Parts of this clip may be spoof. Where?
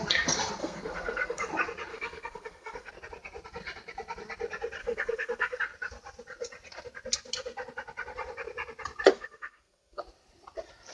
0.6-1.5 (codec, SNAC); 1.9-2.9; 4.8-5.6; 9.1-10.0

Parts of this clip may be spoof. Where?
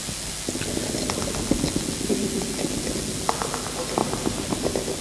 none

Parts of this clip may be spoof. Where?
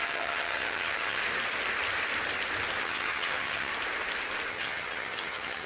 0.0-1.2 (vocoder, HiFi-GAN); 2.8-3.7; 4.5-5.7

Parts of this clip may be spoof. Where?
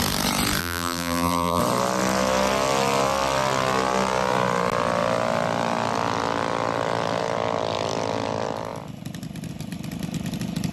0.6-1.6 (vocoder, BigVGAN v2)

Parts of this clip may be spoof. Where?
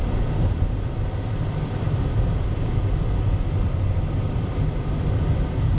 none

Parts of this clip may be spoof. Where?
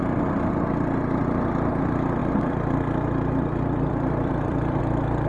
2.2-4.8 (vocoder, BigVGAN v2)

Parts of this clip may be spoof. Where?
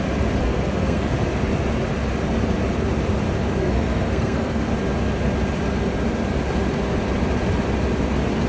0.4-1.1 (codec, SNAC); 3.6-4.7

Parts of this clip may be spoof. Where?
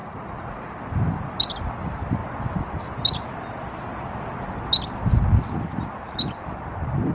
0.0-0.7 (vocoder, Vocos)